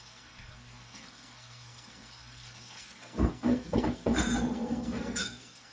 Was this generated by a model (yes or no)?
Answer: yes